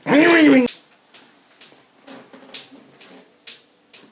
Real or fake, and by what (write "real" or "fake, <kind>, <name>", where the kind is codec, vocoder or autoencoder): real